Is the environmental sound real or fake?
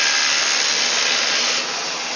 real